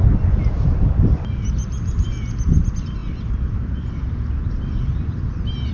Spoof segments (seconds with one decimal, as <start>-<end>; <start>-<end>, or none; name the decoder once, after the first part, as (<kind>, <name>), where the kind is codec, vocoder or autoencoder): none